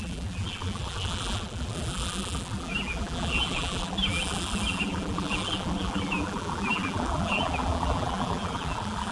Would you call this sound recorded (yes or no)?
no